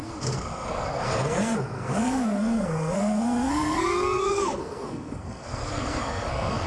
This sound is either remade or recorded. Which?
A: remade